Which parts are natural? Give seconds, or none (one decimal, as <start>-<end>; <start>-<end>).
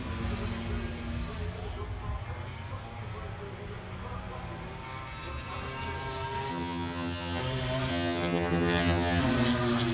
0.0-6.5; 7.4-7.9; 9.2-9.9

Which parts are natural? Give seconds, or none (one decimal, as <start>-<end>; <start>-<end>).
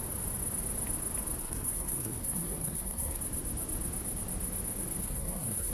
0.0-1.4; 3.2-5.0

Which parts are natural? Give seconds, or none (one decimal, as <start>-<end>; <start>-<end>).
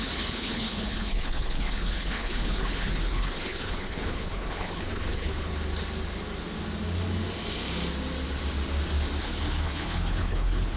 5.5-9.2